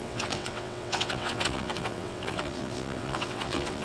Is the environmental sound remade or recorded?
remade